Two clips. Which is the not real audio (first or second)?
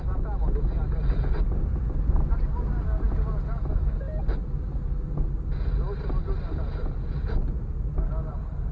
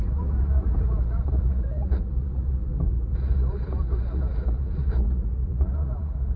second